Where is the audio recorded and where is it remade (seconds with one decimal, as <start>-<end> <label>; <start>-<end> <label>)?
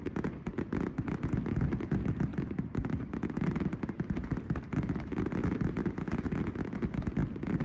0.0-7.6 recorded